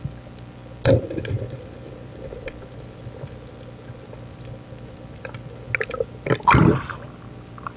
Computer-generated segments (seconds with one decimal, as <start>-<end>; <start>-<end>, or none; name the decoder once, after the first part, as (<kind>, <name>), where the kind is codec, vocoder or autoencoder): none